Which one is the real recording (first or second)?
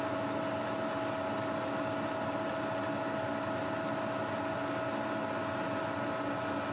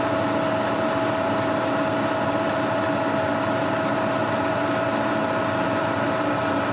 first